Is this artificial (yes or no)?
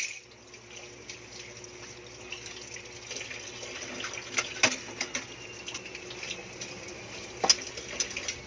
no